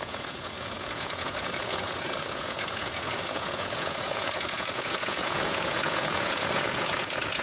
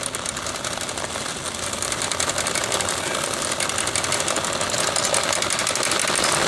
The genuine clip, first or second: second